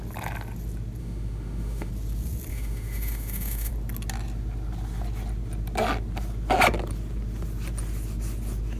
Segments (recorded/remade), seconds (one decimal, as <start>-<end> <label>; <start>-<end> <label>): 0.0-1.0 recorded; 1.0-1.9 remade; 1.9-2.5 recorded; 2.5-3.7 remade; 3.7-8.8 recorded